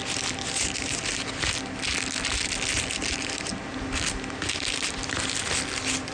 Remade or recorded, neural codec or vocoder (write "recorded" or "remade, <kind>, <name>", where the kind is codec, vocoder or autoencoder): recorded